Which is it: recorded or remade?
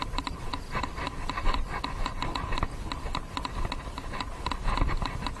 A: recorded